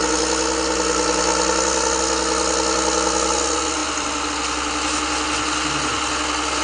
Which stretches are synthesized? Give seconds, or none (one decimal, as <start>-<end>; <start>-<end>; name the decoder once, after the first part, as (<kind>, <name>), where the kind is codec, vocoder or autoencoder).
none